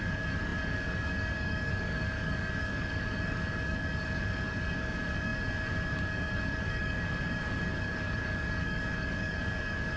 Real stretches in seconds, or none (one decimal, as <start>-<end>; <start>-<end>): none